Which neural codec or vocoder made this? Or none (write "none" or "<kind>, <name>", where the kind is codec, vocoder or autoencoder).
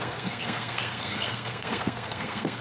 codec, SNAC